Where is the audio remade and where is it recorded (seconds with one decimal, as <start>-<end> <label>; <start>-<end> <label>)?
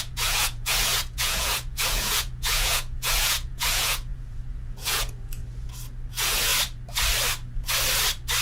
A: 0.0-5.4 remade; 5.4-6.1 recorded; 6.1-6.5 remade; 6.5-8.4 recorded